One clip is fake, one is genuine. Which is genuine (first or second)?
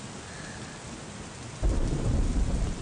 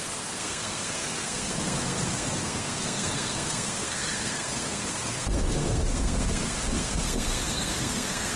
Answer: first